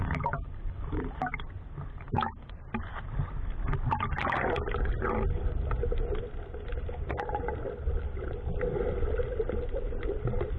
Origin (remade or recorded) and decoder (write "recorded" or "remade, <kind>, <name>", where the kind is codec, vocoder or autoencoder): recorded